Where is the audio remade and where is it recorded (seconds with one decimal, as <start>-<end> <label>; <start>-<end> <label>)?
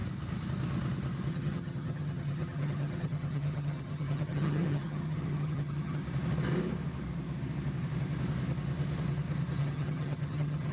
0.0-1.3 recorded; 1.3-6.0 remade; 6.0-9.6 recorded; 9.6-10.7 remade